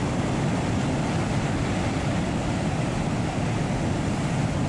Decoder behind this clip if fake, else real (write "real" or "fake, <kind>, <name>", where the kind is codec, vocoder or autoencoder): real